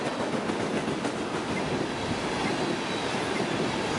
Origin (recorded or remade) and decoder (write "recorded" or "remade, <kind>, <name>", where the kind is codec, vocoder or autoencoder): recorded